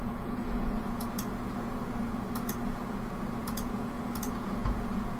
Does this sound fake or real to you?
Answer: fake